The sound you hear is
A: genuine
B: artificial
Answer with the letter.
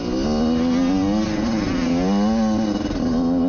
A